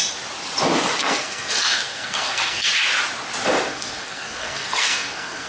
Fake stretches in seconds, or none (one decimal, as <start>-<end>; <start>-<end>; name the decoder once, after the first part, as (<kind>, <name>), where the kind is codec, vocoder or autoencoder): 1.0-2.7 (codec, SNAC); 3.7-5.5